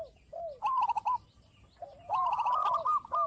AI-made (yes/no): no